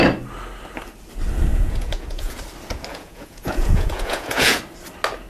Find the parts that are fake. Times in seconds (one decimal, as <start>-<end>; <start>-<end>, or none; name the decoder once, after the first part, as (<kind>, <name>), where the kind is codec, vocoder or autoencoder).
1.5-2.4 (vocoder, Vocos); 2.9-4.6